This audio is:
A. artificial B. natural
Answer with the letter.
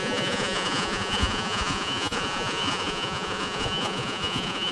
A